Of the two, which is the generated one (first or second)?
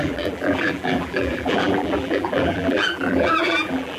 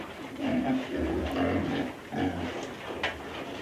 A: first